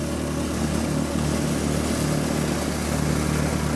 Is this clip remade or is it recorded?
recorded